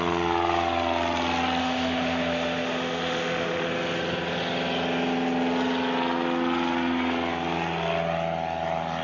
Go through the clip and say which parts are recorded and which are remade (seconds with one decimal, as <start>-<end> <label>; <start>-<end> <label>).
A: 0.0-1.6 recorded; 1.6-3.7 remade; 3.7-9.0 recorded

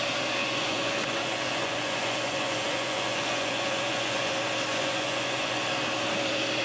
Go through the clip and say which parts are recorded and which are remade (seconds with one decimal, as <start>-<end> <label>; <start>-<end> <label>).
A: 0.0-0.4 recorded; 0.4-4.3 remade; 4.3-4.7 recorded; 4.7-5.6 remade; 5.6-6.6 recorded

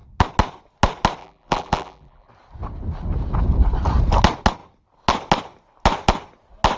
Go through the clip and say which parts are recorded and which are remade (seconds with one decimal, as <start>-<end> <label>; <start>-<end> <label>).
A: 0.0-1.2 recorded; 1.2-2.3 remade; 2.3-6.8 recorded

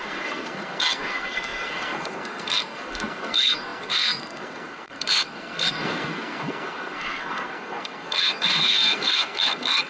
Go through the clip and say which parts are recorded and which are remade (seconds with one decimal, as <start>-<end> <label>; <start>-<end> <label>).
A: 0.0-9.9 remade